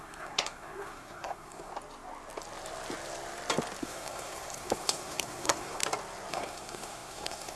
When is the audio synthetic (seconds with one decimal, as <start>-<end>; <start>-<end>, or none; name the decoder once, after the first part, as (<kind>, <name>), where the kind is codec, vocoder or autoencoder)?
0.0-1.7 (codec, SNAC); 3.8-5.8; 6.3-7.6